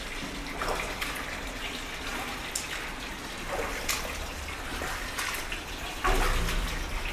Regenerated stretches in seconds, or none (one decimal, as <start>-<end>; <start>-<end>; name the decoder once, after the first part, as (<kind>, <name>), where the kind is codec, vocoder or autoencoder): none